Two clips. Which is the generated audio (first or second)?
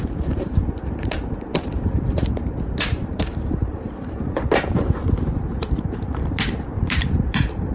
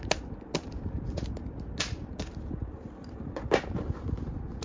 first